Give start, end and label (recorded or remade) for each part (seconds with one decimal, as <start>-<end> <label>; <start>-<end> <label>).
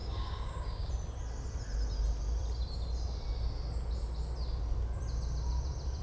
0.0-0.9 remade; 0.9-6.0 recorded